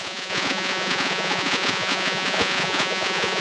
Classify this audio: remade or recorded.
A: remade